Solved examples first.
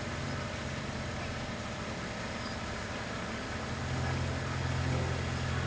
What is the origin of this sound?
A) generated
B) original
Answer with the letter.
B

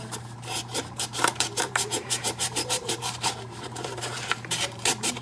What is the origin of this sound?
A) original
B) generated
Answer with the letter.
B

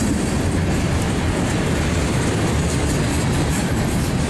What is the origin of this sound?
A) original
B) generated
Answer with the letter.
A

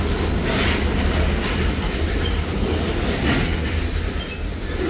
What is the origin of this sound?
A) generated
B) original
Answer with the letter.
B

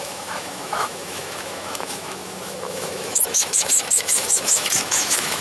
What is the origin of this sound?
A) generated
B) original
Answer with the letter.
A